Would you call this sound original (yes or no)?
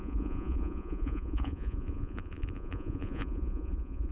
no